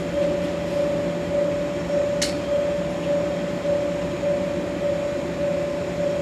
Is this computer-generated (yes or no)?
no